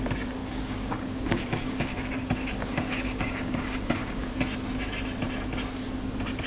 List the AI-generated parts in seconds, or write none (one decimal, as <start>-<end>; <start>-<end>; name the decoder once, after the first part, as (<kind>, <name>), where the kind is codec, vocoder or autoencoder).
0.4-4.3 (codec, DAC)